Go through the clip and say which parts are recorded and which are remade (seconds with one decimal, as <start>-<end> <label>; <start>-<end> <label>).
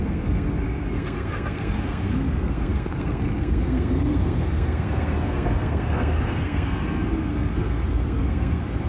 0.0-8.9 remade